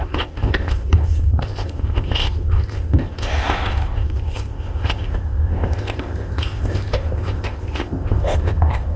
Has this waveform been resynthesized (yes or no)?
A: yes